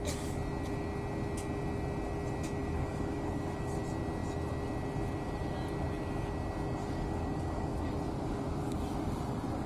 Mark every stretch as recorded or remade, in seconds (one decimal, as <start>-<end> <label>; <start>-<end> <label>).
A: 0.0-2.6 recorded; 2.6-3.8 remade; 3.8-6.8 recorded; 6.8-9.7 remade